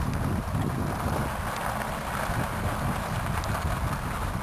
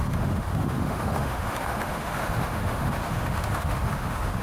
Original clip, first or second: first